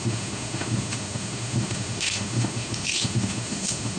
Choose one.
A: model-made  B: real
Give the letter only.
A